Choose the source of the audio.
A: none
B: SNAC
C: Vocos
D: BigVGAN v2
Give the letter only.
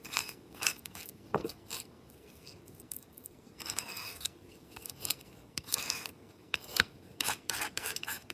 B